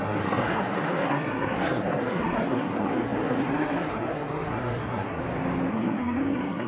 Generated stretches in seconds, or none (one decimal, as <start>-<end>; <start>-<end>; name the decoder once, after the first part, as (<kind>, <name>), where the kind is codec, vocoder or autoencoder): 0.0-5.2 (codec, SNAC); 5.7-6.7